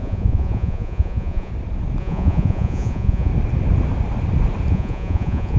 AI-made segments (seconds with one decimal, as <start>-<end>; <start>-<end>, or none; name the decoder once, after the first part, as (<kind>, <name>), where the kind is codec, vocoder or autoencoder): 0.0-1.5 (vocoder, Vocos); 2.0-3.3; 4.7-5.6